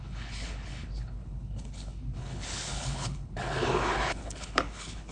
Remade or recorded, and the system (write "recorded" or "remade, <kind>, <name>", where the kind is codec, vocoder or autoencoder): remade, codec, HILCodec